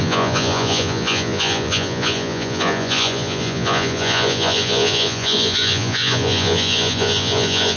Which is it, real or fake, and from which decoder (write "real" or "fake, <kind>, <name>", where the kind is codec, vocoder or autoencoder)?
fake, vocoder, Vocos